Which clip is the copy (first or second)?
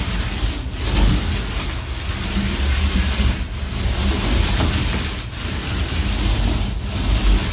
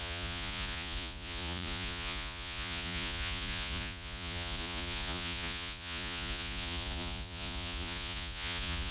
second